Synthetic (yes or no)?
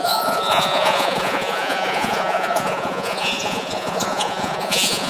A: yes